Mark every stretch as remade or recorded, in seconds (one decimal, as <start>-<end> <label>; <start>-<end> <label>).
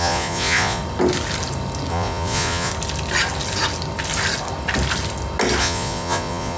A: 0.0-0.8 remade; 0.8-1.9 recorded; 1.9-2.7 remade; 2.7-5.6 recorded; 5.6-6.6 remade